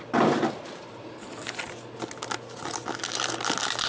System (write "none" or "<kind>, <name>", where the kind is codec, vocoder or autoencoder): none